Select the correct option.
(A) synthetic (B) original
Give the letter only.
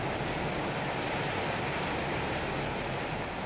B